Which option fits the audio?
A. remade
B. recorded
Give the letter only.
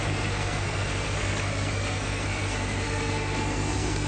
A